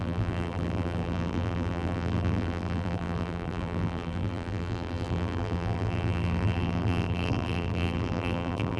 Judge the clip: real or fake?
fake